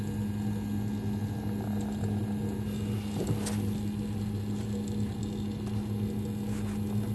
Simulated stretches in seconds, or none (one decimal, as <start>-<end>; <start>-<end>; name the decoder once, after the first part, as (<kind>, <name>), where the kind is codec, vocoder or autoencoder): 1.2-5.2 (vocoder, BigVGAN v2)